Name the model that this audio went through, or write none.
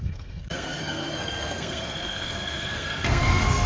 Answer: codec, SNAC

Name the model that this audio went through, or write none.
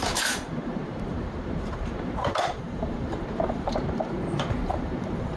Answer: vocoder, BigVGAN v2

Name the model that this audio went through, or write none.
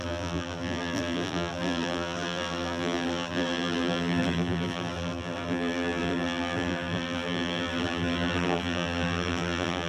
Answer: vocoder, BigVGAN v2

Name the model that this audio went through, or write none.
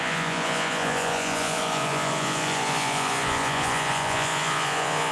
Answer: vocoder, Vocos